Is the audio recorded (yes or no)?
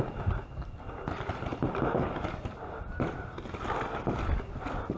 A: yes